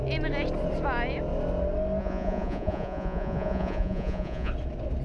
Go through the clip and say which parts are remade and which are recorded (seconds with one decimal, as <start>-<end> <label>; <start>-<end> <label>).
0.0-2.0 recorded; 2.0-4.5 remade; 4.5-5.0 recorded